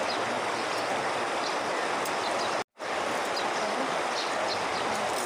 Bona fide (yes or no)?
yes